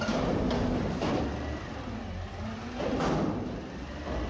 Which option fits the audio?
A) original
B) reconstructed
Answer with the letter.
A